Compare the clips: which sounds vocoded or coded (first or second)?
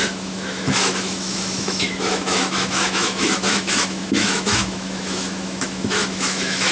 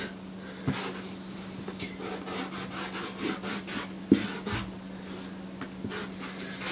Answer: first